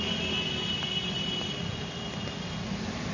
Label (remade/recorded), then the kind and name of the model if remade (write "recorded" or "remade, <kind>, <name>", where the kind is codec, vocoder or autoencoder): recorded